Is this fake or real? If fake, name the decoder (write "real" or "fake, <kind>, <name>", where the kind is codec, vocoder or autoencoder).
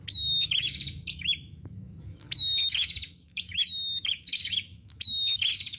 fake, autoencoder, DAC-VAE